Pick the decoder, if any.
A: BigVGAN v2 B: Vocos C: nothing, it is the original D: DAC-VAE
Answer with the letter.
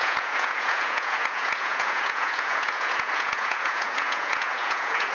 B